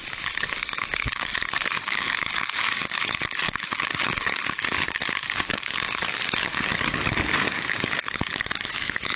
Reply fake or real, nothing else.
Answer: fake